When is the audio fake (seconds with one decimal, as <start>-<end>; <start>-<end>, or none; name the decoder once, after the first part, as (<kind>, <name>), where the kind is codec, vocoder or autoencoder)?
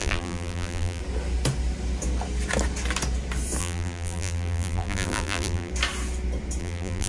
0.0-1.0 (vocoder, BigVGAN v2); 3.6-5.7; 6.6-7.1